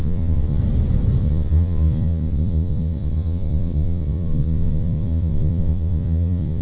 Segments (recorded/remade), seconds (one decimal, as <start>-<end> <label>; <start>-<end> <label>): 0.0-0.6 remade; 0.6-1.2 recorded; 1.2-6.6 remade

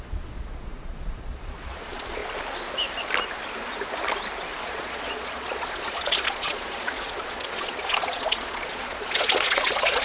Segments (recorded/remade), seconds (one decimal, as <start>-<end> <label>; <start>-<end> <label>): 0.0-2.2 remade; 2.2-4.6 recorded; 4.6-10.0 remade

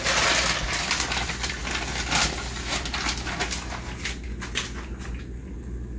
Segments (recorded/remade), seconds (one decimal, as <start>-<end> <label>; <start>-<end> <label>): 0.0-6.0 recorded

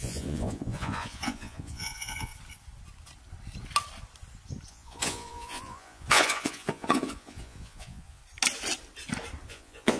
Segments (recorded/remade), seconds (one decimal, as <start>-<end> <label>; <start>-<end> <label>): 0.0-2.3 remade; 2.3-4.7 recorded; 4.7-8.2 remade; 8.2-9.5 recorded; 9.5-10.0 remade

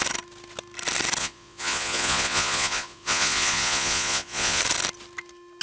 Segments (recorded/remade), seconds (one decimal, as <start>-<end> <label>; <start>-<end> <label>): 0.0-1.2 recorded; 1.2-4.6 remade; 4.6-5.6 recorded